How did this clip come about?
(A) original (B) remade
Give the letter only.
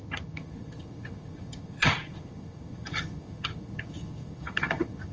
B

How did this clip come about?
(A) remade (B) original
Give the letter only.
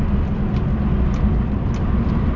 B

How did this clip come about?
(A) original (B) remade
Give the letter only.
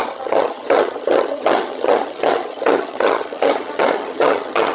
B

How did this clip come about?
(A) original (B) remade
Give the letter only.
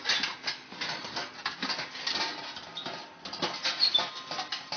A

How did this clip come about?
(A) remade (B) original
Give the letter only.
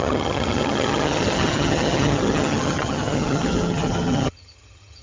A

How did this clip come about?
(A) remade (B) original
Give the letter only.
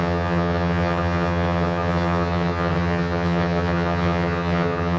A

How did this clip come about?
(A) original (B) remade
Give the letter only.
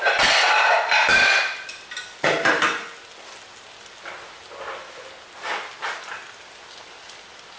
A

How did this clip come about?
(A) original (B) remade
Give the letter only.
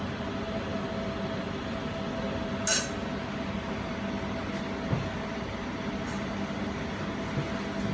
A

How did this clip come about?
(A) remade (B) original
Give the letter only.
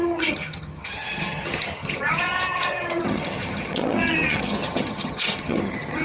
A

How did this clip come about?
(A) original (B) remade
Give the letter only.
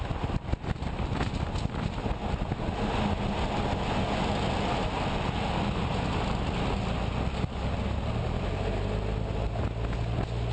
A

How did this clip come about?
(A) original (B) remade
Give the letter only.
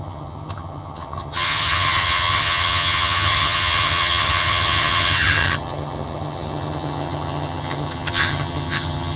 B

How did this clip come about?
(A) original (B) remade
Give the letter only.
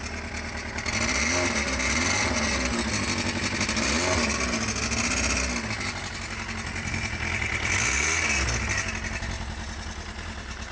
A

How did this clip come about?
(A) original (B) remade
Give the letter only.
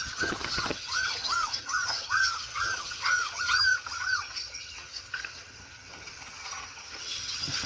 B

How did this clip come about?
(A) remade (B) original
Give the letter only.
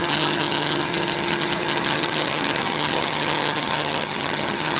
A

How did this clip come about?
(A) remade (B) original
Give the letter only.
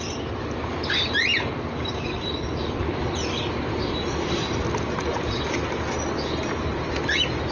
B